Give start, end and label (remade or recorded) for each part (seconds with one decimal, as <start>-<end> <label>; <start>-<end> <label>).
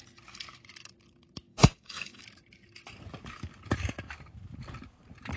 0.0-1.5 recorded; 1.5-2.2 remade; 2.2-5.4 recorded